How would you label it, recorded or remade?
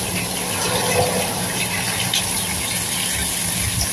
recorded